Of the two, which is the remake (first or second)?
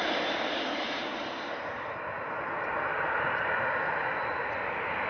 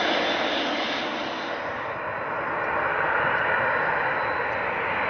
first